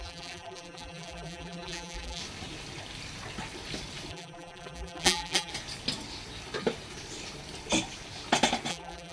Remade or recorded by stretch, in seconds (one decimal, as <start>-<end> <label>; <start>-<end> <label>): 0.0-2.2 remade; 2.2-4.1 recorded; 4.1-5.5 remade; 5.5-8.7 recorded; 8.7-9.1 remade